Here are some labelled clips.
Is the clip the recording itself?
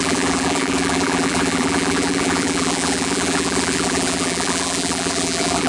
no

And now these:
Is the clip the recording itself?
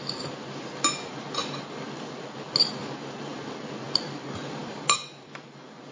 yes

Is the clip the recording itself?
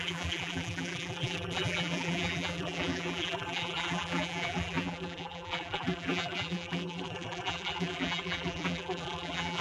no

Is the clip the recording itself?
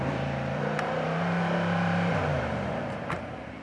no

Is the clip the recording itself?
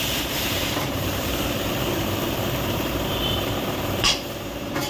no